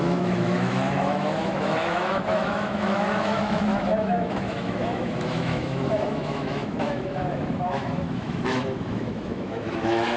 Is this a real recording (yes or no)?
no